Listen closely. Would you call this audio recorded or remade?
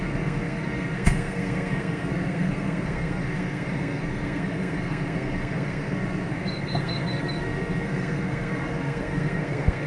remade